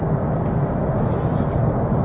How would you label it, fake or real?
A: real